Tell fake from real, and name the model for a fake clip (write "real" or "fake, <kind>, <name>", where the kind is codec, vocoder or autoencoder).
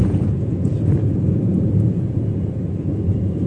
fake, vocoder, Vocos